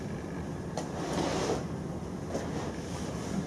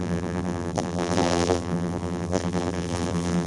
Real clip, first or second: first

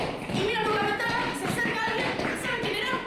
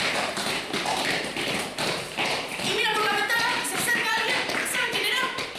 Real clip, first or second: first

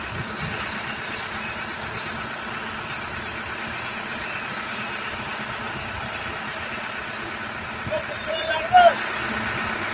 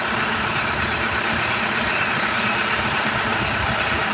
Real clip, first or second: first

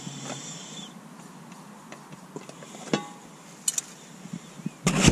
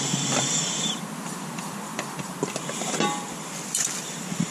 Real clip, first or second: first